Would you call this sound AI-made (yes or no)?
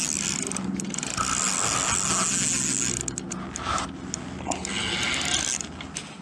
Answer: no